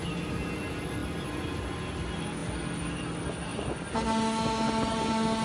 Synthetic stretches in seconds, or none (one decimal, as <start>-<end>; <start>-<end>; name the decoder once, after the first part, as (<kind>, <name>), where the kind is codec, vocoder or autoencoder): none

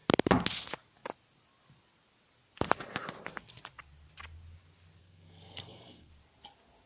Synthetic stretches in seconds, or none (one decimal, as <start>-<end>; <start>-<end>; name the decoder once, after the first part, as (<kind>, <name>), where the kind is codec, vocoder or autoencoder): 5.0-6.1 (codec, SNAC)

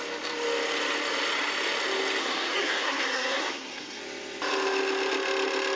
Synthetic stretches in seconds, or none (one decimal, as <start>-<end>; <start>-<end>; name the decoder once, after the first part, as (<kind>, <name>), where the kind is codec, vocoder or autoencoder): 2.2-4.0 (codec, SNAC)

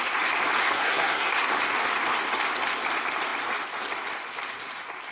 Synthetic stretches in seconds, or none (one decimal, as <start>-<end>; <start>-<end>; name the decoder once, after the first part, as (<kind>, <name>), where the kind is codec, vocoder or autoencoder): 0.6-1.5 (codec, SNAC)

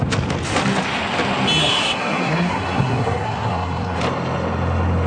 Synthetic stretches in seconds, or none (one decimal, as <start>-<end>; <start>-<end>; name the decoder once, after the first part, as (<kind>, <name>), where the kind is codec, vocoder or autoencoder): 1.6-4.0 (codec, SNAC)

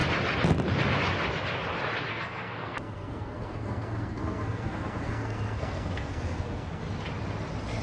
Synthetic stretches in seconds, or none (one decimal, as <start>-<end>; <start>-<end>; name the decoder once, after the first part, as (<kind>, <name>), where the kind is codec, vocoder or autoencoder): 2.1-6.8 (codec, SNAC)